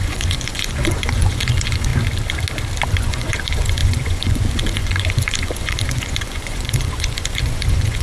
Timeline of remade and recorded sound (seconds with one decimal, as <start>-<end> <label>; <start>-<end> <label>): 0.0-1.9 remade; 1.9-2.9 recorded; 2.9-8.0 remade